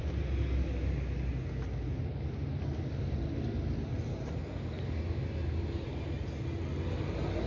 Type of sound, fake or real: real